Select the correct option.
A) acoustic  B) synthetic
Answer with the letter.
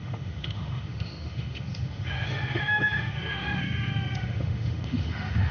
B